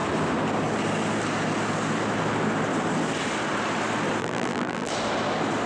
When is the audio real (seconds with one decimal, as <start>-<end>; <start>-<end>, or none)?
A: 0.0-4.2; 4.9-5.7